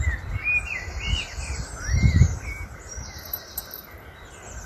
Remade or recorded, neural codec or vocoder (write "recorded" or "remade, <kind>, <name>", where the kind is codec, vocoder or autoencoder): recorded